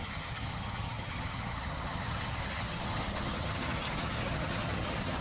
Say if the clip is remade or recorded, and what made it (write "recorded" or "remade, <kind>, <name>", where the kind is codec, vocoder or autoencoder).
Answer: remade, vocoder, HiFi-GAN